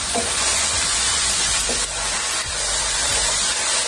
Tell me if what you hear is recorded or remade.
remade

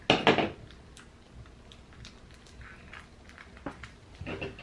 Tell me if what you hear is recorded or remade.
recorded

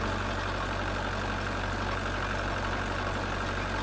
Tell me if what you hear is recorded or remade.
recorded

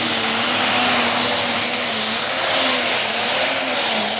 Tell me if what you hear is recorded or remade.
recorded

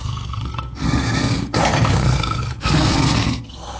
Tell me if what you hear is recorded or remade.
remade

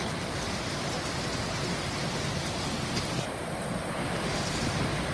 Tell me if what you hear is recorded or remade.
recorded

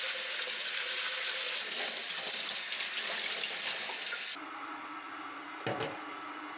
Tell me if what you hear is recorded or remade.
recorded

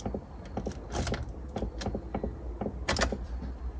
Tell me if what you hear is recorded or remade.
recorded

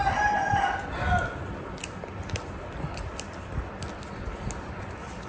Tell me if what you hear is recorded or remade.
recorded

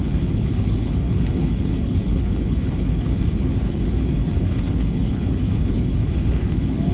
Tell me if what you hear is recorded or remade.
remade